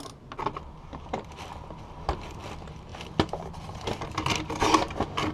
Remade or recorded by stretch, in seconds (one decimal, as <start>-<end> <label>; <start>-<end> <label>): 0.0-5.3 recorded